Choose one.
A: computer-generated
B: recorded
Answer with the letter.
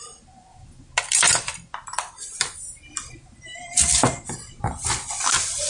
B